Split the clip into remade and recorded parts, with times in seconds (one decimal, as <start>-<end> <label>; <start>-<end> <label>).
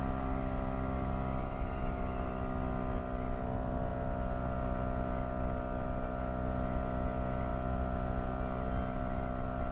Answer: 0.0-9.7 recorded